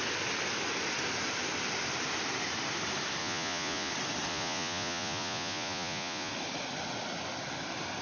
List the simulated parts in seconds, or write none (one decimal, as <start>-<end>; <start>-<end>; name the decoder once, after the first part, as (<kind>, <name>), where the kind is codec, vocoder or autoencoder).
3.2-3.9 (vocoder, Vocos); 4.3-6.3